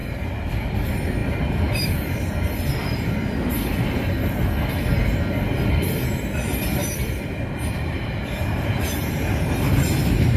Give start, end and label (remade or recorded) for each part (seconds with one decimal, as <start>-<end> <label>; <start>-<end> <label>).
0.0-6.8 recorded; 6.8-9.5 remade; 9.5-10.4 recorded